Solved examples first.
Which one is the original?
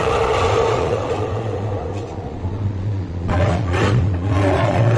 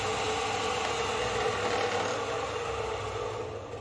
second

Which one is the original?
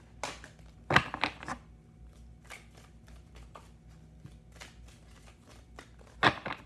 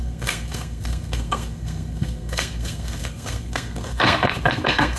first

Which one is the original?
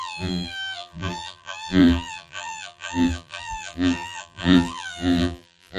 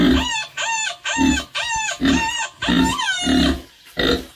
second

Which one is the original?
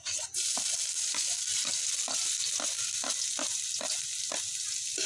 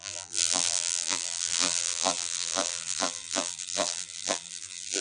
first